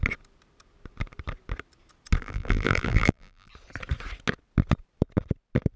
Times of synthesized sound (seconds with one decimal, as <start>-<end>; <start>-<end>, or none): 2.2-3.5